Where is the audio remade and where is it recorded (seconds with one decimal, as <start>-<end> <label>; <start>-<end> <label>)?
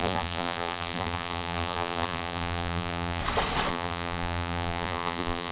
0.0-3.2 remade; 3.2-3.7 recorded; 3.7-5.5 remade